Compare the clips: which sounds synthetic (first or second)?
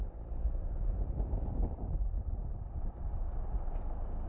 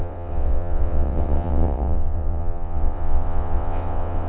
second